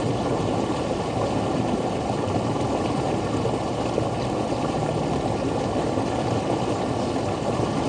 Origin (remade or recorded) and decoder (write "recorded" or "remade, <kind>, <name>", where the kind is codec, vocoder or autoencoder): recorded